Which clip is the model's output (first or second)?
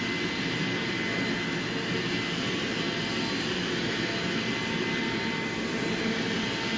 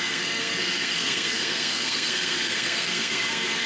second